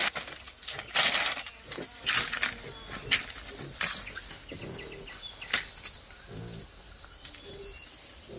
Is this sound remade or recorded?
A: recorded